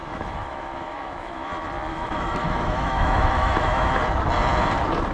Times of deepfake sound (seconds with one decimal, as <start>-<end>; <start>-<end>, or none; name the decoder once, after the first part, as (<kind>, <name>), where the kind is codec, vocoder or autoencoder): 0.0-1.5 (autoencoder, DAC-VAE); 1.9-3.9